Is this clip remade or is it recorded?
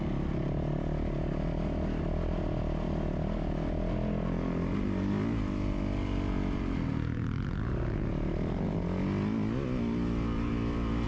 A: recorded